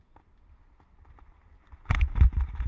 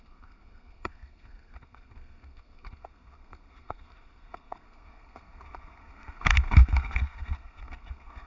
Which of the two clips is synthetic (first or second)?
second